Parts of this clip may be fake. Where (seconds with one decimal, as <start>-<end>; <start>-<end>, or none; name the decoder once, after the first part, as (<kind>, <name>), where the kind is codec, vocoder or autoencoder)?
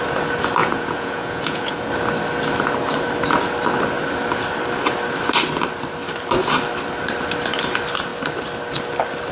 0.6-1.9 (vocoder, Vocos)